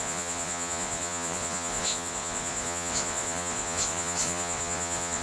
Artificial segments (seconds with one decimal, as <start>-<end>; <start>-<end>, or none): 0.0-5.2